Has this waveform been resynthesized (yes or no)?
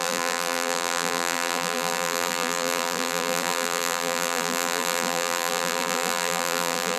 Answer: yes